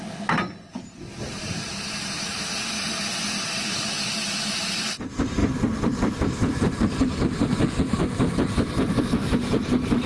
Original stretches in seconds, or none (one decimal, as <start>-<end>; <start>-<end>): 0.0-1.1; 3.0-5.4; 9.0-10.1